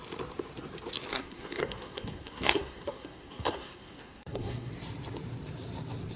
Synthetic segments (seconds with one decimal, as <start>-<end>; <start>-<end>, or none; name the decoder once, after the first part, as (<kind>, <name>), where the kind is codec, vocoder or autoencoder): 1.1-4.7 (codec, SNAC)